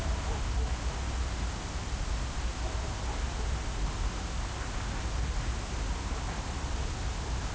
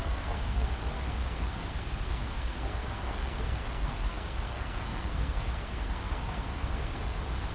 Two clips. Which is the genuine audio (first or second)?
first